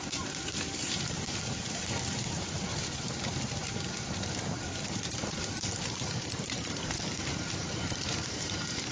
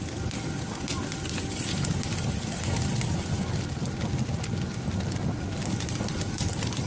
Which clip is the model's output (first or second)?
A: first